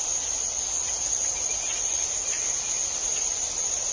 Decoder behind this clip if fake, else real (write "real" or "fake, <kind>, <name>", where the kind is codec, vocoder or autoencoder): real